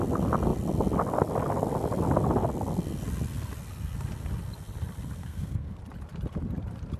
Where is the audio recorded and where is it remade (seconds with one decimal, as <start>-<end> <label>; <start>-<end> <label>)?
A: 0.0-5.2 recorded; 5.2-5.8 remade; 5.8-7.0 recorded

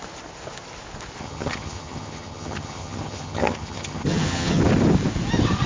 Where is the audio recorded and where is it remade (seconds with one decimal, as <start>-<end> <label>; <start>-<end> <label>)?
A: 0.0-1.2 recorded; 1.2-4.6 remade; 4.6-5.7 recorded

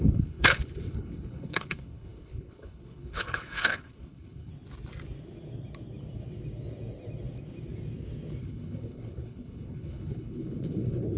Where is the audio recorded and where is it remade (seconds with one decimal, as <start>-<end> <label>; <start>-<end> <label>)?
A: 0.0-4.5 remade; 4.5-8.4 recorded; 8.4-11.2 remade

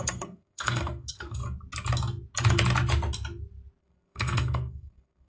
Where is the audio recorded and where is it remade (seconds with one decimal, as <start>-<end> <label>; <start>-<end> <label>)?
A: 0.0-1.4 remade; 1.4-3.8 recorded; 3.8-5.3 remade

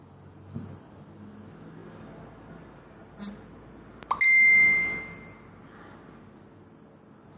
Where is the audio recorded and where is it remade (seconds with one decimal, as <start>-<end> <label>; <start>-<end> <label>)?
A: 0.0-7.4 recorded